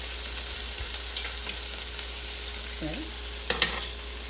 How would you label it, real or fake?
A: real